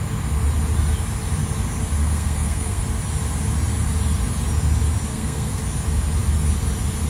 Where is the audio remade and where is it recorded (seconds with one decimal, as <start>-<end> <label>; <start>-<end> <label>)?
0.0-2.0 recorded; 2.0-2.8 remade; 2.8-5.1 recorded; 5.1-5.6 remade; 5.6-7.1 recorded